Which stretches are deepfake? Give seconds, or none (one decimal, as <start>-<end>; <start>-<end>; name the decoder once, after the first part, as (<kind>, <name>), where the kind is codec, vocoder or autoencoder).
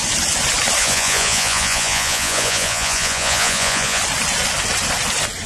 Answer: 0.8-4.0 (vocoder, Vocos)